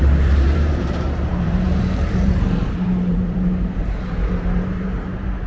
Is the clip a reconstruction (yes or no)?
yes